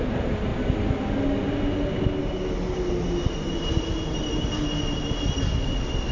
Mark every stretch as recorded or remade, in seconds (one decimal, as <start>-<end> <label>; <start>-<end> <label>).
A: 0.0-6.1 recorded